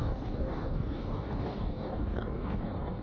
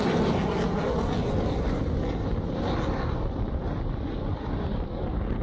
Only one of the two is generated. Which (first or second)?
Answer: first